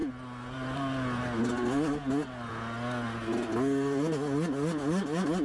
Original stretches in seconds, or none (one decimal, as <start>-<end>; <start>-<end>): 0.0-5.4